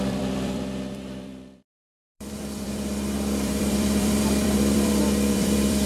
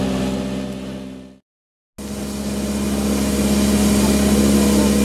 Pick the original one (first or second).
second